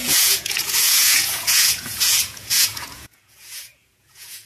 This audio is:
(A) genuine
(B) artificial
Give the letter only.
B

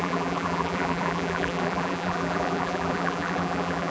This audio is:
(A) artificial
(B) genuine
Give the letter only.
A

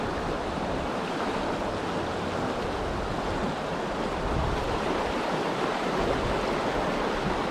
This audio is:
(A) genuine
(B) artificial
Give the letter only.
A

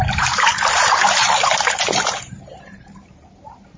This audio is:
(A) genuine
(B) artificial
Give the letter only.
B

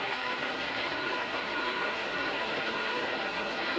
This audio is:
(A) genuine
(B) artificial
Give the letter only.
B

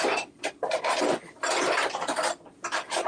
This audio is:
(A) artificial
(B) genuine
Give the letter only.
B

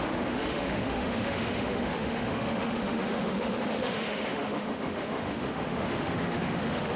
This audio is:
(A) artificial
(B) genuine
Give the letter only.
A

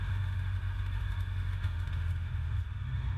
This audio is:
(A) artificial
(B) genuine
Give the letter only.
A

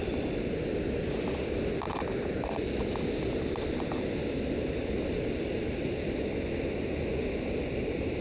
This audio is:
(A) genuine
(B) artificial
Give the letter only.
A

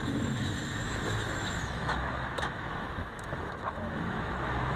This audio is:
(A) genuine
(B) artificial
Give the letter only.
B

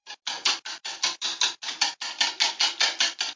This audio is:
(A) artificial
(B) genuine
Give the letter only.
B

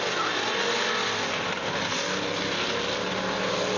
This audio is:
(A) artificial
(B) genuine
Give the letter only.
B